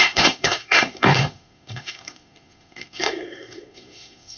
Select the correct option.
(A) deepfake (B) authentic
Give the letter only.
A